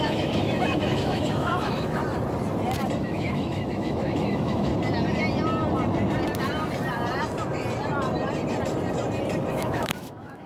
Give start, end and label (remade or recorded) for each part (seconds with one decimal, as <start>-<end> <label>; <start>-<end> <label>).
0.0-2.0 remade; 2.0-3.0 recorded; 3.0-4.7 remade; 4.7-9.5 recorded; 9.5-10.5 remade